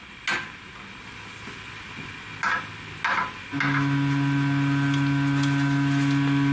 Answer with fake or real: real